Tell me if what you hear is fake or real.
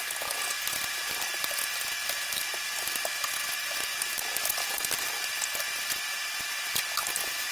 real